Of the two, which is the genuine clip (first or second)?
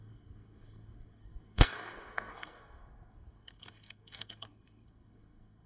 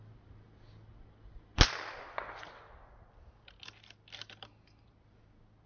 second